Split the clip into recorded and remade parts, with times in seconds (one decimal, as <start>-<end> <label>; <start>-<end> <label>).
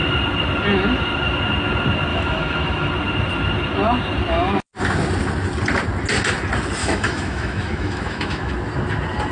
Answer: 0.0-2.1 recorded; 2.1-2.9 remade; 2.9-6.8 recorded; 6.8-8.5 remade; 8.5-9.3 recorded